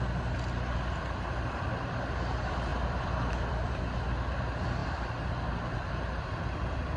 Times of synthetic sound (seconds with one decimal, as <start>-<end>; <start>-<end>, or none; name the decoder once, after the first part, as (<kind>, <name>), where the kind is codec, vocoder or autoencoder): 0.0-4.8 (vocoder, BigVGAN v2); 6.1-7.0